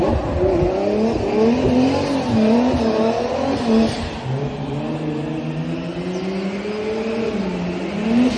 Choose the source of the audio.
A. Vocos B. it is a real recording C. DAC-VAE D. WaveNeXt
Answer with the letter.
B